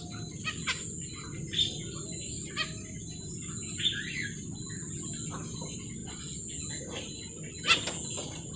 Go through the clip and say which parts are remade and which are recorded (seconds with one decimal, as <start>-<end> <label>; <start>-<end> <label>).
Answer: 0.0-8.6 recorded